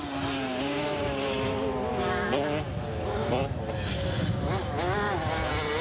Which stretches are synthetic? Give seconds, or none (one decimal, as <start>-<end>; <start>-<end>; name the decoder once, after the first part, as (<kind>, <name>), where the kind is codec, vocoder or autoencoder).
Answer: none